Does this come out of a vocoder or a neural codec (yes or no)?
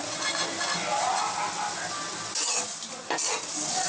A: no